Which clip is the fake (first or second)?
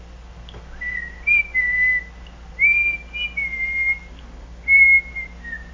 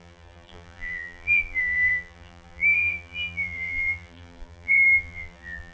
second